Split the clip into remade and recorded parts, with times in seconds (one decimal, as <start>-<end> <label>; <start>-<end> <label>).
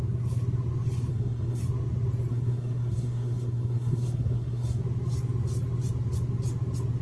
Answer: 0.0-1.1 recorded; 1.1-1.6 remade; 1.6-2.3 recorded; 2.3-4.8 remade; 4.8-7.0 recorded